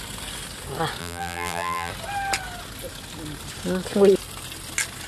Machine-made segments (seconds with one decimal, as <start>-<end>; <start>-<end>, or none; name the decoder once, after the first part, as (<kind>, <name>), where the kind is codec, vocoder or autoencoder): 1.0-1.9 (vocoder, BigVGAN v2)

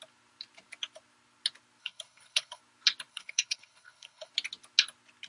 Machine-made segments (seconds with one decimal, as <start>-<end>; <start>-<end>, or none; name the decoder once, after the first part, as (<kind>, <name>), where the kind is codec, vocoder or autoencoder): 1.8-2.6 (codec, HILCodec); 3.1-4.3

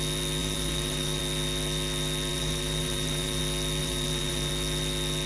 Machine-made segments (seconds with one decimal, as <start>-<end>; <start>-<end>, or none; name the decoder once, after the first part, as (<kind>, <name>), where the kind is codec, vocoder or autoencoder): 0.4-1.2 (vocoder, BigVGAN v2); 2.3-3.4; 3.8-4.5

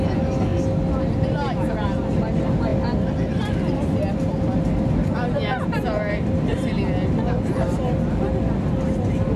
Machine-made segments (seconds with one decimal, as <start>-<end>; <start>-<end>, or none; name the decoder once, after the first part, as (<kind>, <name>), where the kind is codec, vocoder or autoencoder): none

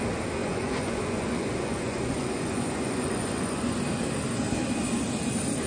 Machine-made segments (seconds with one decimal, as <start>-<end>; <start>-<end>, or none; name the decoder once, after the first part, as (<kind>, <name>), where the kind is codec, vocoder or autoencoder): 0.4-3.8 (vocoder, Vocos)

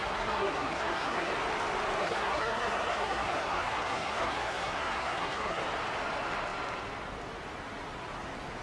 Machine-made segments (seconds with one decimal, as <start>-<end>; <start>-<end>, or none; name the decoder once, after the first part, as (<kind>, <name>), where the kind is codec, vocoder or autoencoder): 0.0-1.3 (codec, SNAC); 2.0-5.6